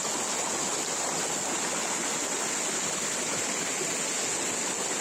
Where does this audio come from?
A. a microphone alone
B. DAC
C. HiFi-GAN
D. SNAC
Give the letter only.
A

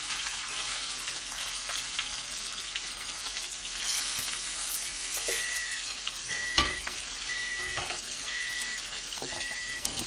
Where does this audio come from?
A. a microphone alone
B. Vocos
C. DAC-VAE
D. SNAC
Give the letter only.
D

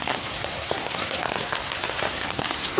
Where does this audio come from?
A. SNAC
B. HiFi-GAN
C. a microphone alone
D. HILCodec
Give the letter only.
A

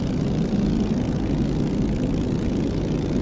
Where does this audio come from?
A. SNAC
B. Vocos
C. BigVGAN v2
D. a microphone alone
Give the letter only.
D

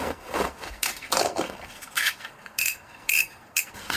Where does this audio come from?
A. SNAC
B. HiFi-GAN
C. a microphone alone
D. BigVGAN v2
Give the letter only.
A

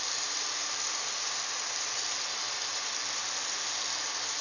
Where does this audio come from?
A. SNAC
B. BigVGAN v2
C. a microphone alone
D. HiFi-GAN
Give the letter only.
C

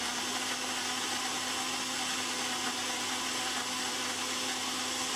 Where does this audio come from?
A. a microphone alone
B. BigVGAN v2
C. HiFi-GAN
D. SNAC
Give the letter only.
A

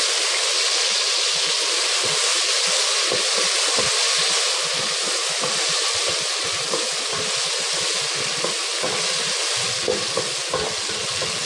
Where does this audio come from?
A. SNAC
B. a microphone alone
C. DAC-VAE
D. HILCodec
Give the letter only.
B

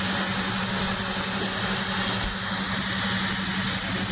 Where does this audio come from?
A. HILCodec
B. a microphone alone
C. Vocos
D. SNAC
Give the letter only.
B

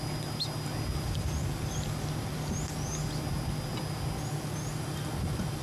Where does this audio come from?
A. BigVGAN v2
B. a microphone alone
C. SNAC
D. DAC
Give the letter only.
B